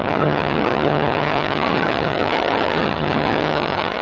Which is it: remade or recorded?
remade